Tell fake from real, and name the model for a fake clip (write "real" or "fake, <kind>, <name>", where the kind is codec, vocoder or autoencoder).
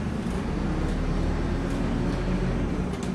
real